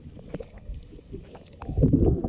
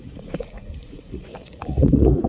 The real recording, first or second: first